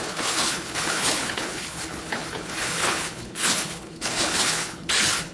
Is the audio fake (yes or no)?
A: yes